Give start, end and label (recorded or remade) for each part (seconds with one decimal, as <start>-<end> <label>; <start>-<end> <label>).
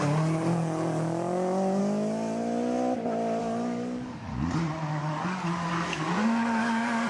0.0-1.8 remade; 1.8-3.4 recorded; 3.4-4.3 remade; 4.3-4.9 recorded; 4.9-7.1 remade